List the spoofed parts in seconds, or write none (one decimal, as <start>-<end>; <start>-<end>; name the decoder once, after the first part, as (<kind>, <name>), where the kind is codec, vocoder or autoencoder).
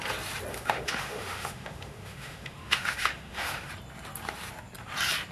0.5-3.7 (autoencoder, DAC-VAE)